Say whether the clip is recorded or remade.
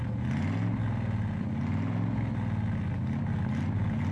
recorded